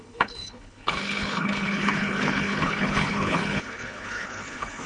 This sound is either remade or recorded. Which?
remade